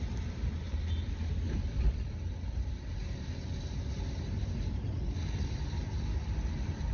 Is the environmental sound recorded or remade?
recorded